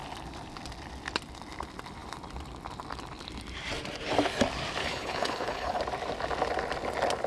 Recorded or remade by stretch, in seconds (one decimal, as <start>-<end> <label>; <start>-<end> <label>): 0.0-4.8 recorded; 4.8-5.8 remade; 5.8-7.3 recorded